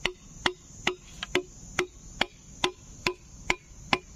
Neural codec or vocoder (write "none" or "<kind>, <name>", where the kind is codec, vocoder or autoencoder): none